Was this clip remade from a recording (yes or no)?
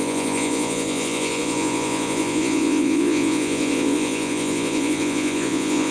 yes